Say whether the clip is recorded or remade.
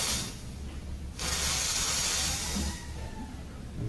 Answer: recorded